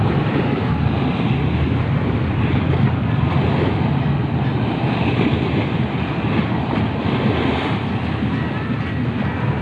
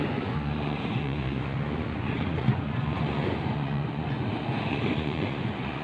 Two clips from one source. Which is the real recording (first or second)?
first